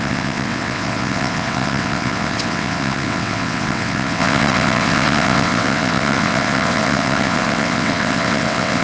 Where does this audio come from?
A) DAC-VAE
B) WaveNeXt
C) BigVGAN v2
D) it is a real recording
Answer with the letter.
B